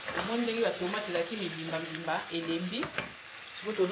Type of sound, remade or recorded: recorded